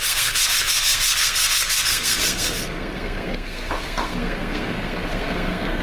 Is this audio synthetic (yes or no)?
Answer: yes